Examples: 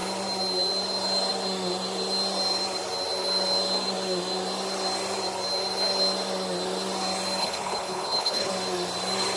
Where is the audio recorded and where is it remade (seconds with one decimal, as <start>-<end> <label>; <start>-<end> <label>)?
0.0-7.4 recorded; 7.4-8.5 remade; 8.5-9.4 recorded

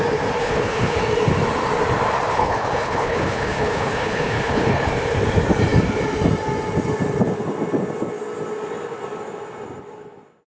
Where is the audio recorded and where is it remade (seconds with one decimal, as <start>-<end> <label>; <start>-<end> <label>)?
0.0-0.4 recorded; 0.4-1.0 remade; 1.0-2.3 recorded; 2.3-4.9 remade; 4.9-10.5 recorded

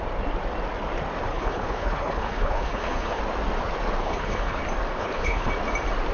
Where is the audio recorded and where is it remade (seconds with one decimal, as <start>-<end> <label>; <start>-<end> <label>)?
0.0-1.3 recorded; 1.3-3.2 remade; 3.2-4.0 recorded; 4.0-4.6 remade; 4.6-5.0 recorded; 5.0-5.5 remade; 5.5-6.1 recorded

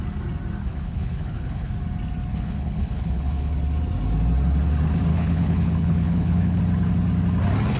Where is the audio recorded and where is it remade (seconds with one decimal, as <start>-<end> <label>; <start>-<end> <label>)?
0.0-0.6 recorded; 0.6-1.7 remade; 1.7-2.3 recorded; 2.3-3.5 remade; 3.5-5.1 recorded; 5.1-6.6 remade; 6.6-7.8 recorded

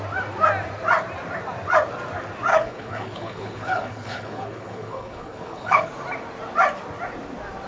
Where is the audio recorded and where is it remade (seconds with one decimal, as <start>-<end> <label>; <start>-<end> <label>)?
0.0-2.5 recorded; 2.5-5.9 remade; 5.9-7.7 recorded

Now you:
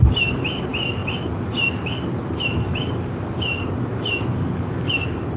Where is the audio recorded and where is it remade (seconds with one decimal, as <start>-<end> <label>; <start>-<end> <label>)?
0.0-5.4 recorded

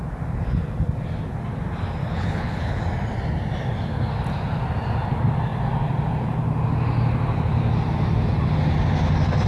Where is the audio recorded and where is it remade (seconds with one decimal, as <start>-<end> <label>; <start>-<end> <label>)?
0.0-2.0 recorded; 2.0-2.8 remade; 2.8-9.5 recorded